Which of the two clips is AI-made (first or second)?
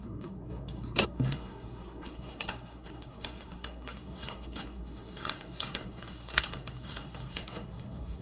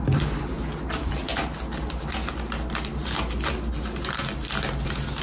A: first